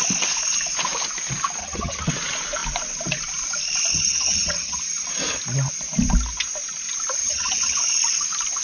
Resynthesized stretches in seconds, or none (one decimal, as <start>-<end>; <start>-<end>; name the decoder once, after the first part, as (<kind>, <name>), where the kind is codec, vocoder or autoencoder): 1.6-2.1 (vocoder, HiFi-GAN); 3.9-4.8; 7.2-7.8